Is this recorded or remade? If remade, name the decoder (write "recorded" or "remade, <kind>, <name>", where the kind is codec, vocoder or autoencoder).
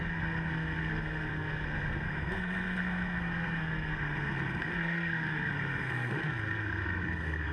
remade, codec, SNAC